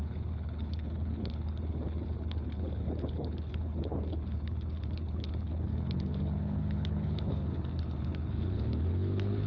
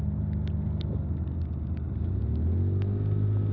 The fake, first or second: first